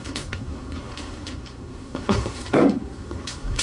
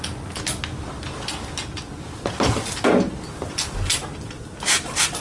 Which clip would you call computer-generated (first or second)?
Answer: first